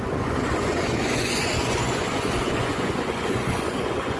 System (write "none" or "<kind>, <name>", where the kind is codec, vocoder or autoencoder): vocoder, Vocos